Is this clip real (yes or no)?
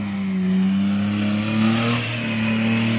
yes